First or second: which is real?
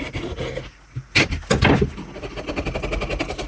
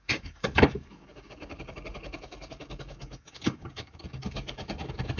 first